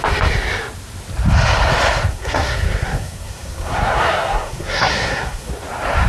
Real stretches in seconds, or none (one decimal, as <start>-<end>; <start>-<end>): 0.0-2.1; 5.5-6.1